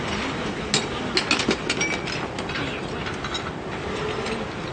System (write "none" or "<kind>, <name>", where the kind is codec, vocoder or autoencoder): none